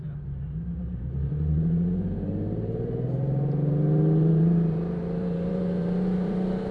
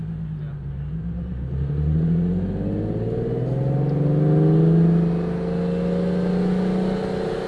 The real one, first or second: second